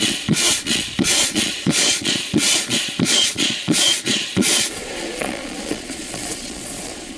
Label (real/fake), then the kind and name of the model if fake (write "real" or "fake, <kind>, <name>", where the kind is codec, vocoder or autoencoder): fake, vocoder, Vocos